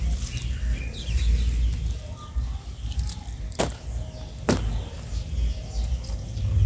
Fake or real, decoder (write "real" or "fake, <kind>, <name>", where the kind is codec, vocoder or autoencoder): real